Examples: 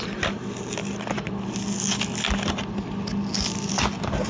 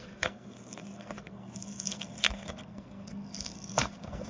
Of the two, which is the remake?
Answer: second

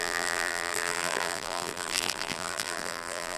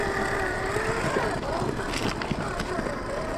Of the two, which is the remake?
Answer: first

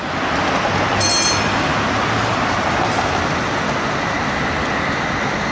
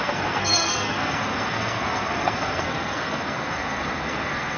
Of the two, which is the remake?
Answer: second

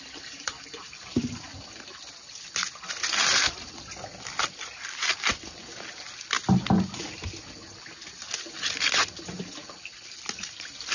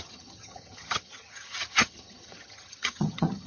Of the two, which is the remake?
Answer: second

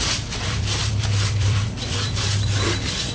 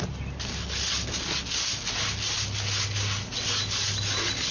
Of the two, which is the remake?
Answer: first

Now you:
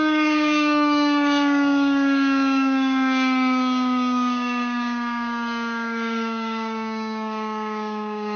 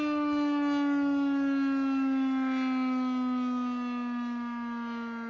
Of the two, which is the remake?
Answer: first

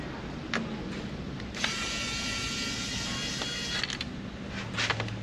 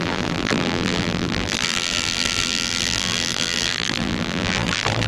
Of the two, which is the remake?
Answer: second